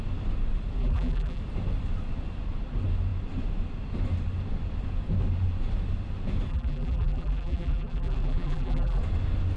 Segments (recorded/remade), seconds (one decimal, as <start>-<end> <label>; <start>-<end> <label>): 0.0-0.8 recorded; 0.8-1.4 remade; 1.4-6.5 recorded; 6.5-9.0 remade; 9.0-9.6 recorded